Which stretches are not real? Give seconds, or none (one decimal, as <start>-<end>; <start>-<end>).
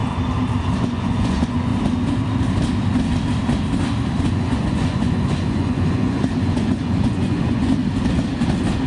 0.8-1.7; 4.3-7.8